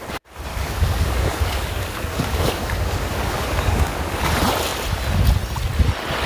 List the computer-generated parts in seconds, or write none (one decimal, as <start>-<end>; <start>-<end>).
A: 0.5-4.3